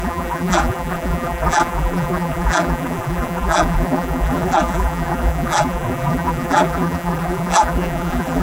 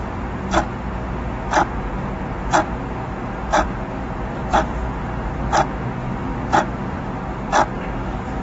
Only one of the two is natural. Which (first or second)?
second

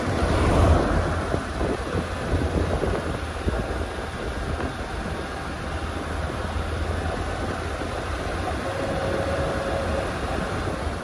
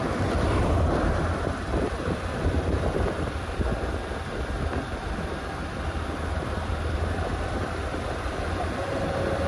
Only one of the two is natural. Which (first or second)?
first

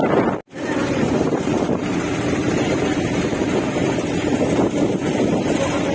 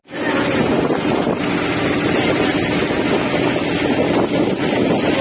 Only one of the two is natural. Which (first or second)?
second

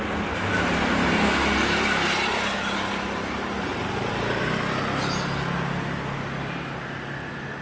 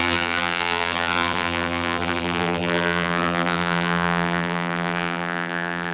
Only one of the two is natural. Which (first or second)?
first